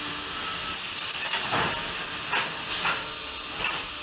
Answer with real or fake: real